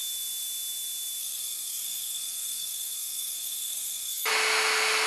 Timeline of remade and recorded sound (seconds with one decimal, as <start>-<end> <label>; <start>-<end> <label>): 0.0-1.2 recorded; 1.2-4.3 remade; 4.3-5.1 recorded